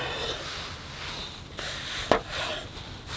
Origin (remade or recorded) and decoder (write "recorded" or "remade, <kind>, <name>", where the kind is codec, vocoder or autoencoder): recorded